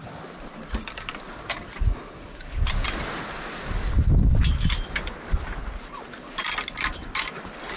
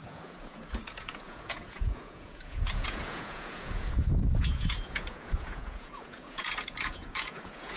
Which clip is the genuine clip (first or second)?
first